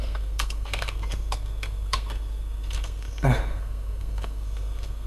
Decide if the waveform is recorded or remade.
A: remade